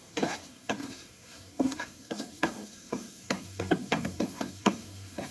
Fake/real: fake